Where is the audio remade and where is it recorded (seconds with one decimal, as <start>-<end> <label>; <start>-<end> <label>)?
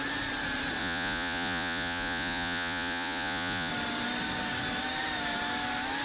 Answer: 0.0-0.8 recorded; 0.8-3.7 remade; 3.7-6.0 recorded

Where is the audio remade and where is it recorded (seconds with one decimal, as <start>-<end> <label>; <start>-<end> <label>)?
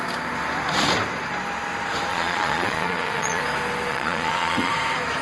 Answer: 0.0-2.1 recorded; 2.1-3.4 remade; 3.4-3.9 recorded; 3.9-4.7 remade; 4.7-5.2 recorded